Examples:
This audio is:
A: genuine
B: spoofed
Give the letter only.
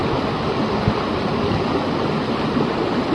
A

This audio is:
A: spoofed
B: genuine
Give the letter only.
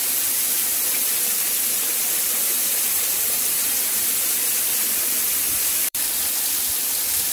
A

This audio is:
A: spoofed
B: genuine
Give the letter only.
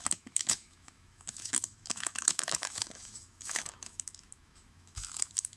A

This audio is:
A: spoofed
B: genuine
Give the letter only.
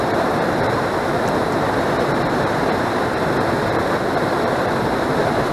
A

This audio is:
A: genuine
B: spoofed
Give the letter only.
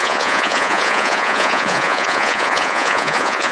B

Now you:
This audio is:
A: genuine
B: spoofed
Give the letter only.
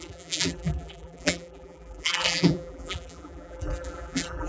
B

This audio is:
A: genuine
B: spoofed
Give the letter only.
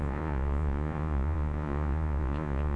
B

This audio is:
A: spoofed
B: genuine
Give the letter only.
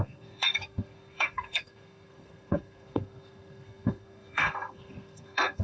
A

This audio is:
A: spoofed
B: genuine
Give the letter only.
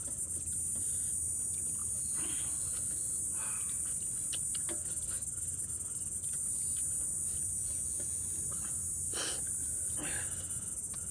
B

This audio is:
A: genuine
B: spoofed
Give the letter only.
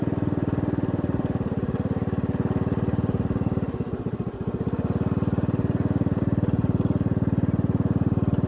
A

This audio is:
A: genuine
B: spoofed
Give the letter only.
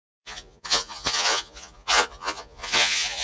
B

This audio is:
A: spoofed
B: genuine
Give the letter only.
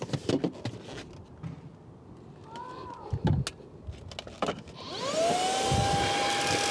B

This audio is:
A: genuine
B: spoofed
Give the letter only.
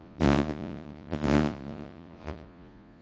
B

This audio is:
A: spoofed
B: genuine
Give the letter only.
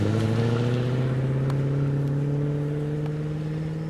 B